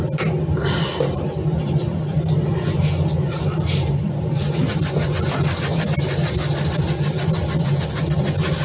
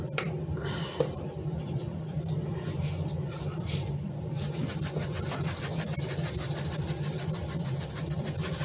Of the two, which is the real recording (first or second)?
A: first